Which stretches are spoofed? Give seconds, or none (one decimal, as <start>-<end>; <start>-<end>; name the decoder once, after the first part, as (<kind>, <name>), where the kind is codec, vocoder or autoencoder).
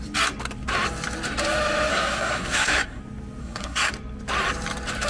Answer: 1.9-3.0 (codec, SNAC); 3.4-3.9